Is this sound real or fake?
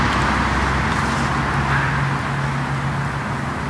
real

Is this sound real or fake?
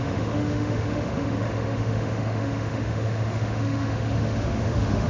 fake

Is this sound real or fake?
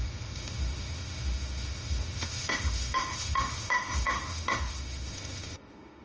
fake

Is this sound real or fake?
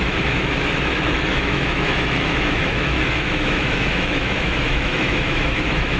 fake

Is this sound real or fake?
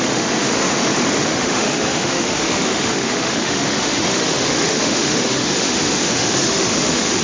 fake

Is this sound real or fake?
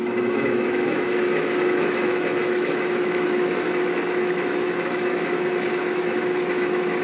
fake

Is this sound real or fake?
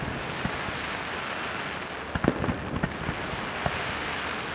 real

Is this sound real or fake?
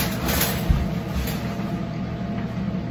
real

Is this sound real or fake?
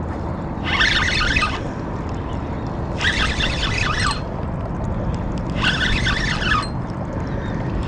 real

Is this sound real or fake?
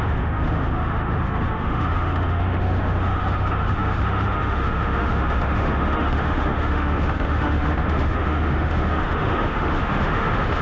fake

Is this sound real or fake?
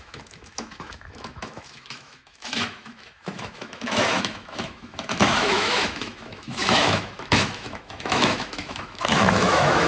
fake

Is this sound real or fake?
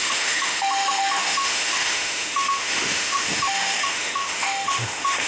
fake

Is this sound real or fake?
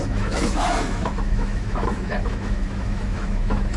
fake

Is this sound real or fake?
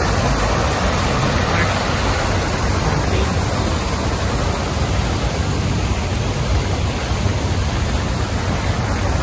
real